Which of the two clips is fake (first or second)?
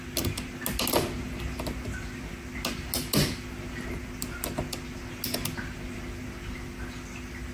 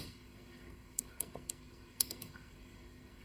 second